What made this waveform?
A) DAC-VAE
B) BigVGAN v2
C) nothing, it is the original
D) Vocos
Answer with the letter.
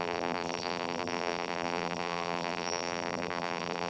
B